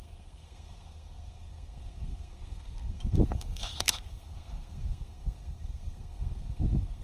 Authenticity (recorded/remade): remade